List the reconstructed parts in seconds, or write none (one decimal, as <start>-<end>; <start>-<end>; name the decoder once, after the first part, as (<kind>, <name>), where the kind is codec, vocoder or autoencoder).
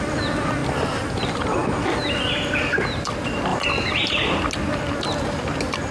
3.5-4.4 (vocoder, BigVGAN v2)